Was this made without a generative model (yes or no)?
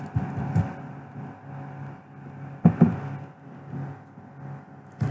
yes